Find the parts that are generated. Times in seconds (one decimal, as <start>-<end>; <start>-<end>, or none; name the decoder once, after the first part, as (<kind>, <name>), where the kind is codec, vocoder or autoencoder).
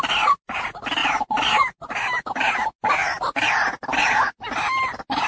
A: none